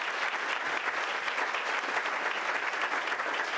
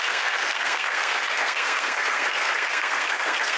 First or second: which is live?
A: first